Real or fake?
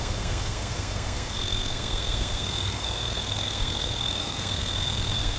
fake